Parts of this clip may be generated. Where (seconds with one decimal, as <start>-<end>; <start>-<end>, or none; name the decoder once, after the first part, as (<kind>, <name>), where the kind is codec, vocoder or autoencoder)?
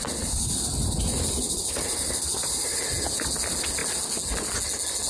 0.0-2.8 (vocoder, BigVGAN v2)